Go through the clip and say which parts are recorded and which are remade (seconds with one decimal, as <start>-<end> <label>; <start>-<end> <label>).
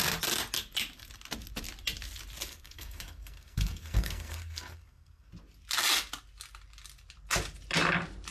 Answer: 0.0-2.5 recorded; 2.5-5.3 remade; 5.3-8.3 recorded